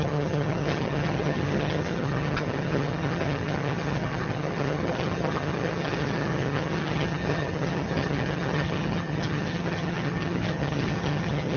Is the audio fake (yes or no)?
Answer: yes